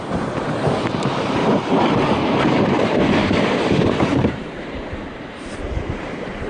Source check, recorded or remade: remade